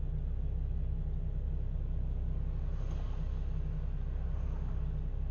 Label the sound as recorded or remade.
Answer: recorded